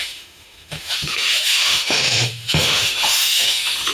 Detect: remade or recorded remade